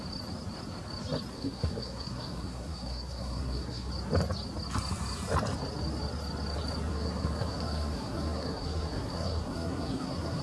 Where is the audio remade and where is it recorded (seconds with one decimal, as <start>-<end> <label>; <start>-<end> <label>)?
0.0-1.3 recorded; 1.3-3.9 remade; 3.9-6.9 recorded; 6.9-10.4 remade